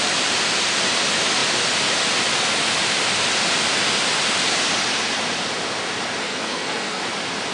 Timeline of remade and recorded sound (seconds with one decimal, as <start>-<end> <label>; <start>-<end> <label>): 0.0-6.2 recorded; 6.2-7.0 remade; 7.0-7.5 recorded